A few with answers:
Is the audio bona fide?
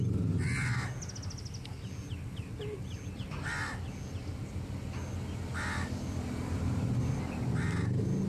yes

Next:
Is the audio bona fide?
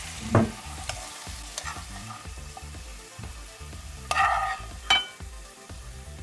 yes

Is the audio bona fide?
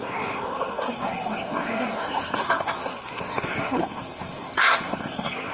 no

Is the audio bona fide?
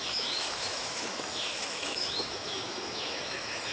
no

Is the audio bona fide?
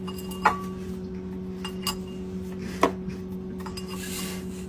yes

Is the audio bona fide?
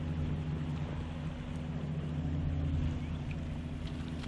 yes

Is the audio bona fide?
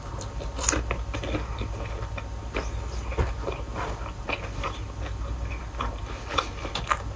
yes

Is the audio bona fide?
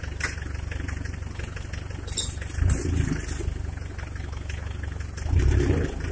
yes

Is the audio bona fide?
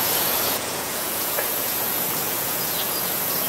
no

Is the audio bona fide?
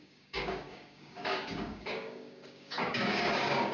no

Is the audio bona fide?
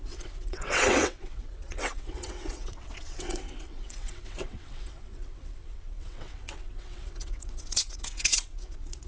no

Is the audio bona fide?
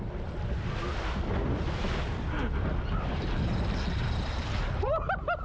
yes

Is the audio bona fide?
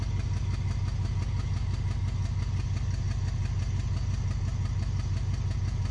yes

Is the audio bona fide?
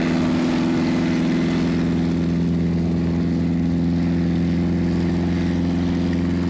yes